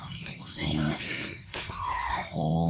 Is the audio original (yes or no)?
no